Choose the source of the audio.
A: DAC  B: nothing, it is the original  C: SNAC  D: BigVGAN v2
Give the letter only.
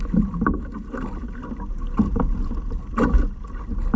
B